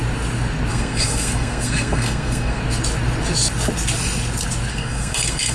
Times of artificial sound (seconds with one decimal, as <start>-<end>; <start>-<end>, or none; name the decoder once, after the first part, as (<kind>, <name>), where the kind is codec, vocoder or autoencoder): 0.7-2.6 (codec, SNAC); 4.7-5.5